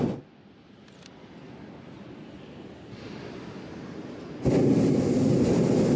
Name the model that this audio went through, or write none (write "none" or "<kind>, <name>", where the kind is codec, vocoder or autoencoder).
none